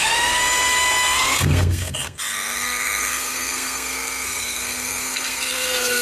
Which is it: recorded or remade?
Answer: remade